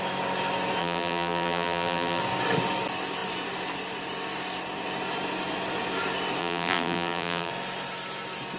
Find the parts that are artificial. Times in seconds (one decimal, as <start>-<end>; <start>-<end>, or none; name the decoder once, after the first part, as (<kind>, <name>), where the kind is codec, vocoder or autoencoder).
0.8-2.2 (vocoder, BigVGAN v2); 6.4-7.5